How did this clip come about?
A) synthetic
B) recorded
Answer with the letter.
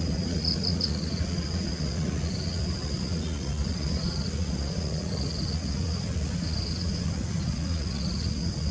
A